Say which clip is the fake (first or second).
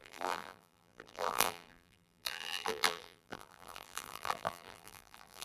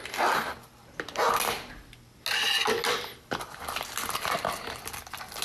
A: first